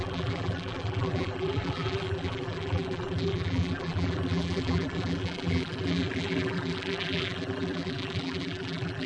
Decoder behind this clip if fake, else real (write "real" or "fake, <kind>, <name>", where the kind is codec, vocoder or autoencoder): fake, vocoder, BigVGAN v2